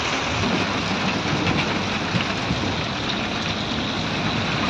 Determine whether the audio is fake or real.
real